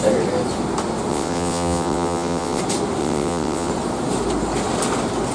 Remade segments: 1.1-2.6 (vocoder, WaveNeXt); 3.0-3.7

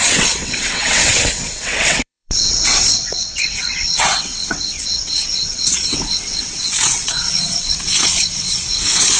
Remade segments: 0.0-9.2 (vocoder, WaveNeXt)

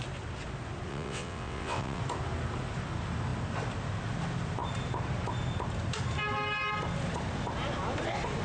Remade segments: 0.9-2.0 (vocoder, WaveNeXt)

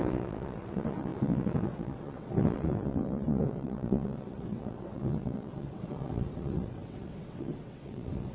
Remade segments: 0.0-8.3 (vocoder, WaveNeXt)

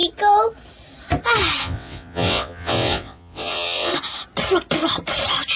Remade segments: 1.6-3.9 (vocoder, WaveNeXt)

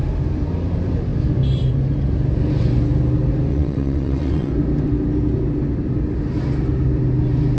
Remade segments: 3.5-4.5 (vocoder, WaveNeXt)

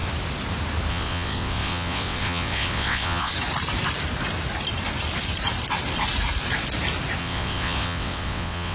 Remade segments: 0.9-3.3 (vocoder, WaveNeXt); 7.2-8.7